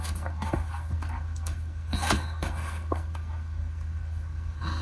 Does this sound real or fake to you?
fake